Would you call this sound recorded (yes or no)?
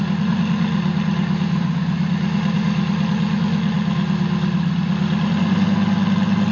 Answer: yes